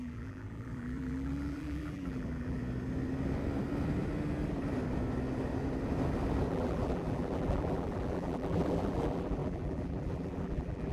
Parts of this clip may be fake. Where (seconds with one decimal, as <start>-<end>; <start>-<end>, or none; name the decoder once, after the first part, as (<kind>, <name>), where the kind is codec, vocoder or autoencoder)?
0.0-2.6 (vocoder, BigVGAN v2); 6.5-10.9